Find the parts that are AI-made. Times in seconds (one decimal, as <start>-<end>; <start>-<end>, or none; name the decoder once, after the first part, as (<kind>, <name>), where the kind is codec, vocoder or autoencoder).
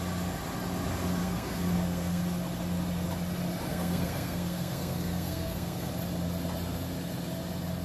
1.2-2.2 (codec, SNAC); 3.7-5.9